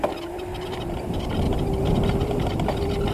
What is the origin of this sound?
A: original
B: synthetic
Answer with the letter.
A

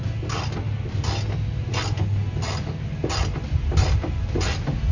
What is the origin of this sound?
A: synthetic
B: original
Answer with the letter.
B